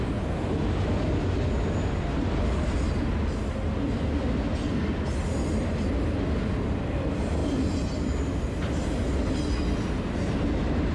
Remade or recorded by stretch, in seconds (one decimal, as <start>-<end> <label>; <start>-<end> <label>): 0.0-10.9 recorded